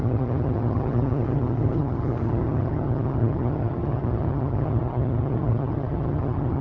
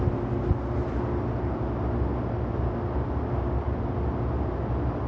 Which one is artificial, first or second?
first